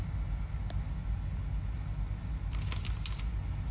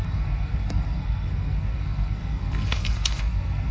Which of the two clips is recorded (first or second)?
first